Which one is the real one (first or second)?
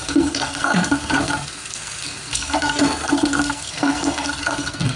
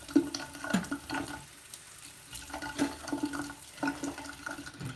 second